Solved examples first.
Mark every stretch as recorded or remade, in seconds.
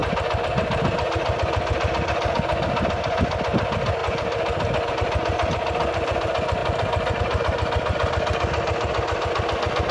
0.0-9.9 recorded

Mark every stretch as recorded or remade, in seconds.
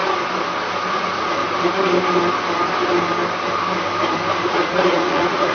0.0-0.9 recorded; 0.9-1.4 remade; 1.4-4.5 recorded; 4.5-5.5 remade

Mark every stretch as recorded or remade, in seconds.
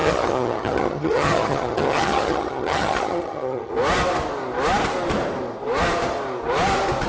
0.0-3.7 remade; 3.7-7.1 recorded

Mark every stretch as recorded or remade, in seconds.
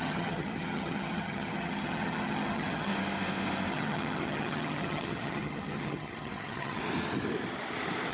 0.0-2.9 remade; 2.9-3.7 recorded; 3.7-6.8 remade; 6.8-8.1 recorded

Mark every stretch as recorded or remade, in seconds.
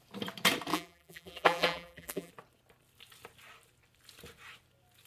0.0-0.7 recorded; 0.7-2.3 remade; 2.3-5.1 recorded